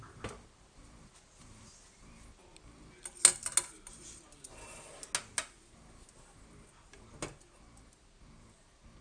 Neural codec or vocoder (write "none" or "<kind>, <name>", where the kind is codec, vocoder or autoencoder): none